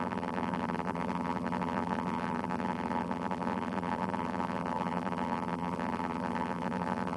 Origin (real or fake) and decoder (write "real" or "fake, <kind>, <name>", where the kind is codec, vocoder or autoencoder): fake, vocoder, BigVGAN v2